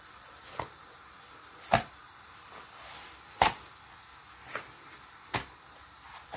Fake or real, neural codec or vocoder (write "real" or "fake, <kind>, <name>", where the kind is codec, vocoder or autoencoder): real